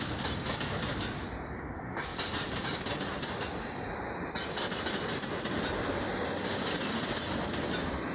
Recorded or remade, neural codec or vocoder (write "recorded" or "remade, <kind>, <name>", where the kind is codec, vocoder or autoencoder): recorded